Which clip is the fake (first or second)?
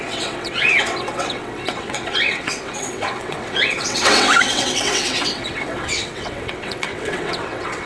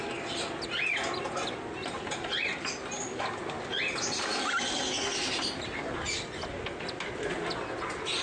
first